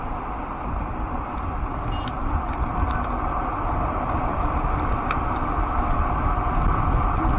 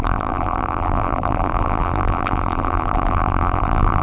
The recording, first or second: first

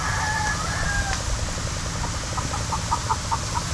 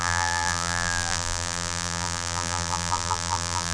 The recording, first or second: first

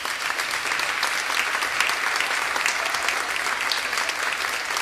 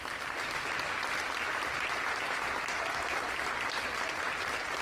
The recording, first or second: first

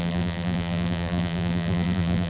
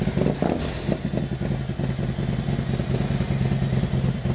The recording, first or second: second